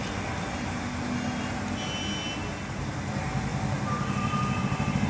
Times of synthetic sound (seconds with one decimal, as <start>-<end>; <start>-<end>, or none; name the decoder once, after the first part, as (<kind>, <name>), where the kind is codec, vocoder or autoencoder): none